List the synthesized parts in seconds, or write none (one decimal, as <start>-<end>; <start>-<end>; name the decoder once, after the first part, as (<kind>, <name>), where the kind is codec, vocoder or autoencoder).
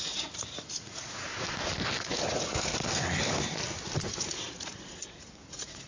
0.0-1.3 (vocoder, Vocos); 2.0-2.7; 4.1-5.9